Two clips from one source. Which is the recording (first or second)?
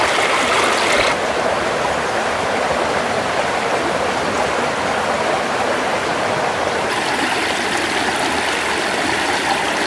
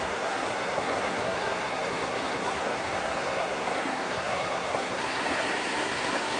first